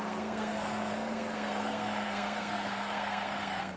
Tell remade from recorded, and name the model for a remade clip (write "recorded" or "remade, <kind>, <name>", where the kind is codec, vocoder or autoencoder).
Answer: remade, codec, SNAC